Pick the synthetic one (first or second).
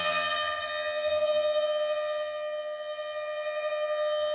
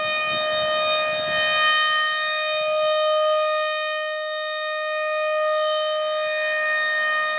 first